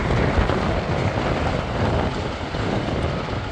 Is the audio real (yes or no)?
yes